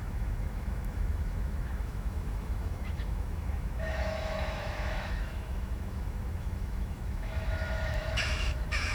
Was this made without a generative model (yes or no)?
no